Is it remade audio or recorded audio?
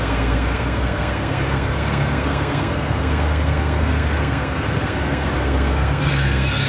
remade